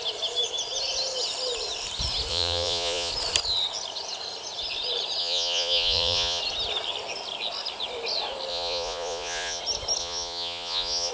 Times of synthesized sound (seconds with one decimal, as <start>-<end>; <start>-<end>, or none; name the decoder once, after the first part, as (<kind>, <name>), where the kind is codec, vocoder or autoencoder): 2.3-3.1 (vocoder, Vocos); 5.2-6.4; 8.5-9.6; 10.0-11.1